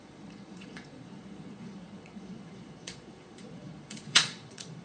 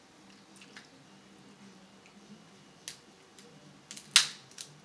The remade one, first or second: first